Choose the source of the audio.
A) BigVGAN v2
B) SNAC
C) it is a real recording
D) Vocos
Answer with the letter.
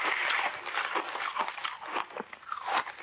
C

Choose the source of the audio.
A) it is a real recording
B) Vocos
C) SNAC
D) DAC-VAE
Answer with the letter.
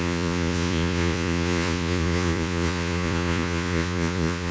B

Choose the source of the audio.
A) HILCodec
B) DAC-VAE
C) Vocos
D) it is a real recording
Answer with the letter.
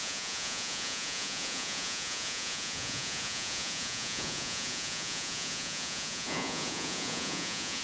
C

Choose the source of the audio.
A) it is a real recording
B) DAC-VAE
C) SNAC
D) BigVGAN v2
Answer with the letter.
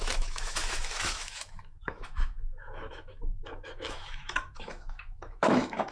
B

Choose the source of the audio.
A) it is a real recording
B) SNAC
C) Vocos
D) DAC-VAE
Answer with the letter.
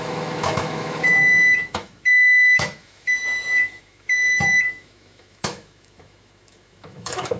D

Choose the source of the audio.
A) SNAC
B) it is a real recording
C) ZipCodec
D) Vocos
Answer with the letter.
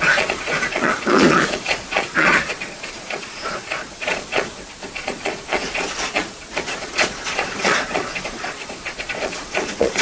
D